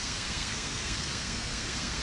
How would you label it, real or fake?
fake